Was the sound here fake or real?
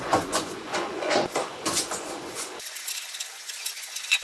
fake